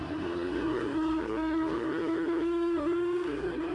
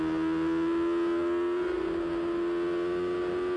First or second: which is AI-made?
first